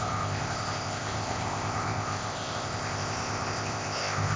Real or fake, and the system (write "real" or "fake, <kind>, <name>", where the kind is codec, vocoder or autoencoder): fake, codec, ZipCodec